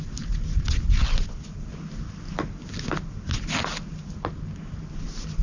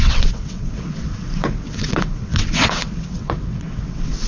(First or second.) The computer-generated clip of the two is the second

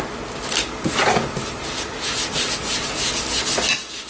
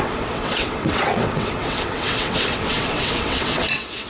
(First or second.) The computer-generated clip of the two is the second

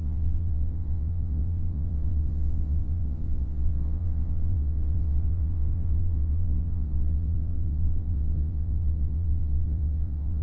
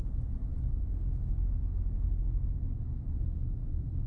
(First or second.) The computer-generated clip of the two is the first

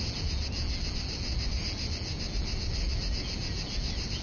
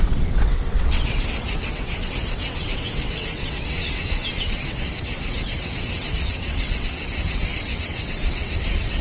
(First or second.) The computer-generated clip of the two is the second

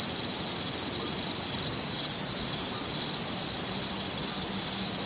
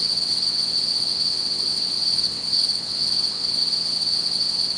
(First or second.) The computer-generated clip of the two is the second